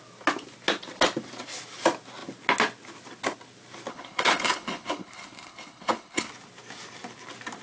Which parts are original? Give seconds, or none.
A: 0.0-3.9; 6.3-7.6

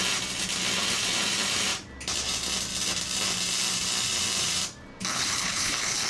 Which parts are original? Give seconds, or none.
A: 0.0-5.1

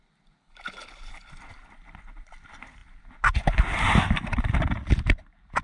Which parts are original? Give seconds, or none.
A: 0.0-0.4; 1.3-5.6

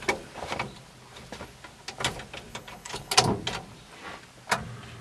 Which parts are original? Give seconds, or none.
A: 0.0-2.5; 3.1-5.0

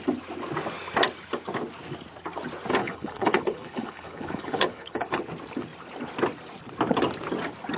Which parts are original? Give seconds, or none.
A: 0.0-2.8; 5.2-7.8

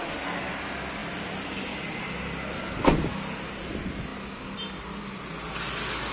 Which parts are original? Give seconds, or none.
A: 0.0-6.1

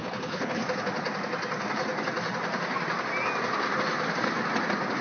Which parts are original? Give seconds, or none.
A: 0.6-5.0

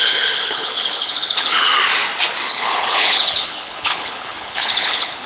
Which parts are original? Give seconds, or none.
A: 1.7-2.5